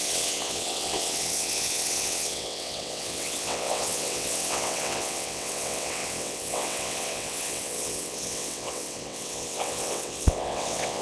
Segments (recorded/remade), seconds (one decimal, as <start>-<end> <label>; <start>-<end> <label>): 0.0-11.0 remade